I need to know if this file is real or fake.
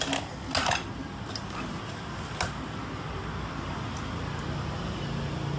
real